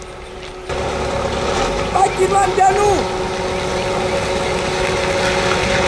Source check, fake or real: real